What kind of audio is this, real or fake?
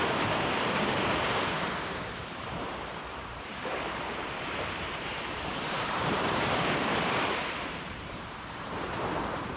fake